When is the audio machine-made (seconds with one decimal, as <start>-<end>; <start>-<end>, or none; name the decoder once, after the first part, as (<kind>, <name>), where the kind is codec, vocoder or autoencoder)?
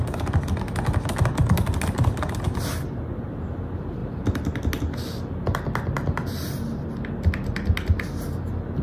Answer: none